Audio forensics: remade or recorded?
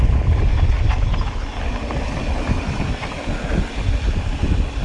recorded